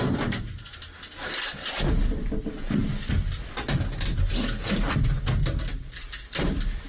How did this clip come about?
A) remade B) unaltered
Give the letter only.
B